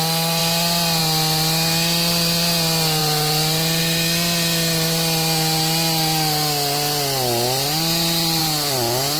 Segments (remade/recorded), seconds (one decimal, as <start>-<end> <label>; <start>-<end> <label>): 0.0-3.0 recorded; 3.0-3.8 remade; 3.8-8.4 recorded; 8.4-9.2 remade